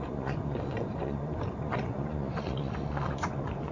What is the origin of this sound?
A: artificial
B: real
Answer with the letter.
A